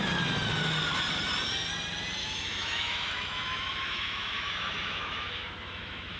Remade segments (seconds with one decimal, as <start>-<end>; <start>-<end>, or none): 2.2-6.2